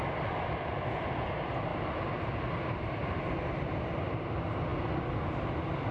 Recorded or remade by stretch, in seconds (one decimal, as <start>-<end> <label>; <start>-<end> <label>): 0.0-5.9 recorded